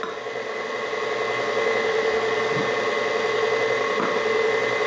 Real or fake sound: real